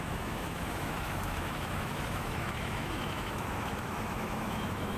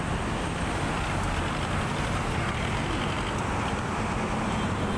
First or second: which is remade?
first